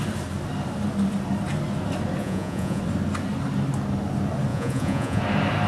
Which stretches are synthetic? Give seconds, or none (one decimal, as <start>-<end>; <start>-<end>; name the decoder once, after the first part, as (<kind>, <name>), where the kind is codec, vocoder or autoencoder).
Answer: 2.2-2.8 (vocoder, Vocos); 4.5-5.2